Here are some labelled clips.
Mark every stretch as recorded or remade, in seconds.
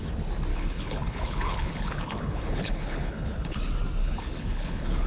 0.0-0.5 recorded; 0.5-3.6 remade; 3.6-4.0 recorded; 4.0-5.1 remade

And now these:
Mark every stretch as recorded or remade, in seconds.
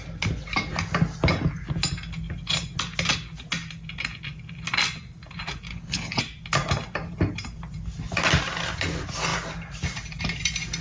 0.0-5.7 recorded; 5.7-6.2 remade; 6.2-10.8 recorded